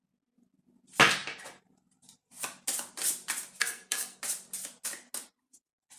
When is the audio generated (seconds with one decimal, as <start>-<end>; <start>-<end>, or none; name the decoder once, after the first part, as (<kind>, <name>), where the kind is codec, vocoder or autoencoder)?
3.6-4.2 (codec, SNAC)